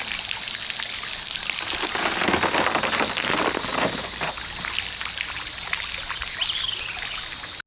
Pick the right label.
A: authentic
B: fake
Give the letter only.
A